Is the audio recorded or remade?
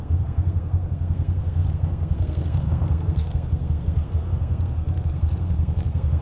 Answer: remade